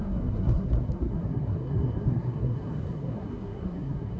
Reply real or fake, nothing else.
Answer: fake